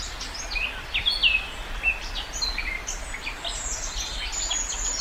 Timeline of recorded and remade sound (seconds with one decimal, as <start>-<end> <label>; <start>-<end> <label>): 0.0-5.0 recorded

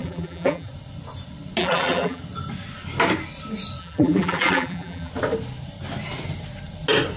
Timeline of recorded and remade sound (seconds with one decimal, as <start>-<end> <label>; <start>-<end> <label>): 0.0-0.7 remade; 0.7-1.6 recorded; 1.6-2.2 remade; 2.2-3.8 recorded; 3.8-5.1 remade; 5.1-7.2 recorded